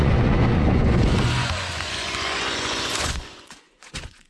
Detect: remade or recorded remade